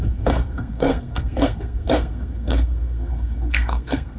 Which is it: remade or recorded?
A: remade